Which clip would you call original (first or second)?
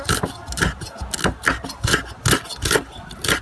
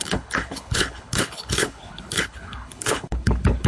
first